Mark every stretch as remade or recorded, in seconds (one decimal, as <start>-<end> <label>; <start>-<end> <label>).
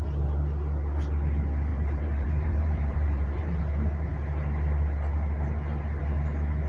0.0-1.7 recorded; 1.7-3.6 remade; 3.6-6.7 recorded